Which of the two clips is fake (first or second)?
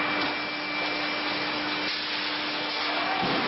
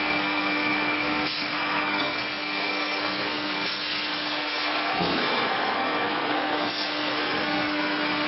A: second